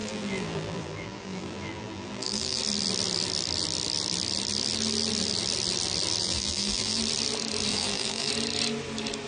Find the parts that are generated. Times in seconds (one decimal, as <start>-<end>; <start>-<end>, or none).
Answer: 0.0-2.6; 6.2-7.0; 7.7-8.3